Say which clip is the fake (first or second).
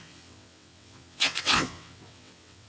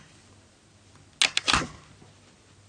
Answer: first